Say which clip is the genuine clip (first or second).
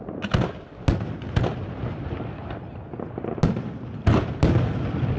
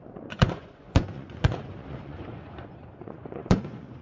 first